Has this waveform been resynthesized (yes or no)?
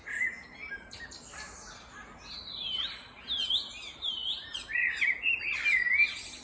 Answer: no